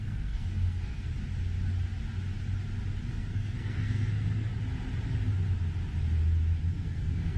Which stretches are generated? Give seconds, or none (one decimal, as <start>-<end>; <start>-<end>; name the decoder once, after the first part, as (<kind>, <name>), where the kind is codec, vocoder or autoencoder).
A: 0.0-1.1 (codec, SNAC); 3.1-4.5; 6.7-7.4